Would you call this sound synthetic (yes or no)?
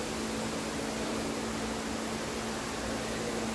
no